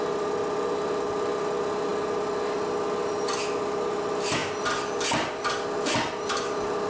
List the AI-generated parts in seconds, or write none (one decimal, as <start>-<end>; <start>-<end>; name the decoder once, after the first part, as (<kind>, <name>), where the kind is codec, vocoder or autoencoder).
none